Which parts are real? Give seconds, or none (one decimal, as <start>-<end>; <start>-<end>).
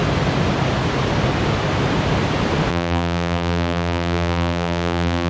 0.0-2.7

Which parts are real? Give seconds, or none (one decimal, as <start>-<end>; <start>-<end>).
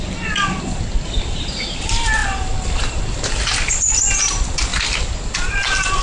0.0-6.0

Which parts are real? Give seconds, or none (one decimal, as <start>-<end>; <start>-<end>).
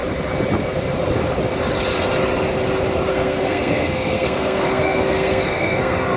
0.0-3.1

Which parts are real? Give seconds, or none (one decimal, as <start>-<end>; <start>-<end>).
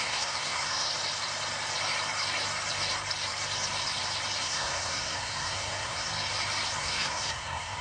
0.9-4.4; 6.1-6.8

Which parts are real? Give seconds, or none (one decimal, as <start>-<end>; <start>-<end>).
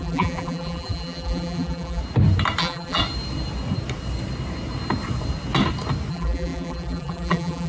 2.0-2.6; 3.0-6.1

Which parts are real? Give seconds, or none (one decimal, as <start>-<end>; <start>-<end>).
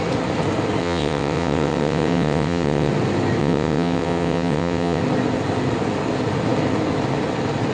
0.0-0.8; 2.9-3.4; 5.0-7.7